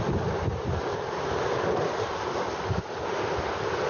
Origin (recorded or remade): recorded